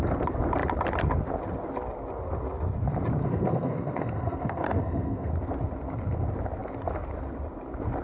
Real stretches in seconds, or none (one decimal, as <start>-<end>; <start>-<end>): 0.0-3.2; 5.3-8.0